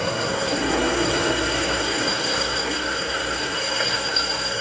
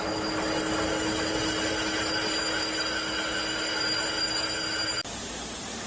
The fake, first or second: first